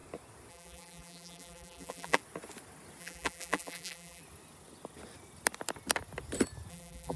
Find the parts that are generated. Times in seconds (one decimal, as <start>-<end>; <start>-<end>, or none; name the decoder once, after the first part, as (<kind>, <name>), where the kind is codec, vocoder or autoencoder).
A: 0.5-2.2 (vocoder, BigVGAN v2); 3.0-4.2; 6.7-7.2